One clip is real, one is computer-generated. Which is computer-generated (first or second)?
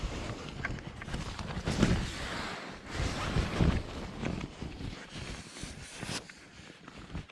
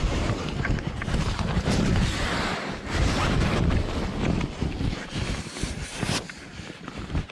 second